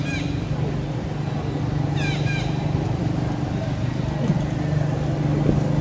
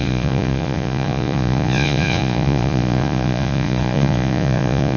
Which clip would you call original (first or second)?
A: first